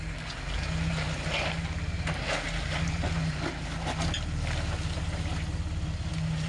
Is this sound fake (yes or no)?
no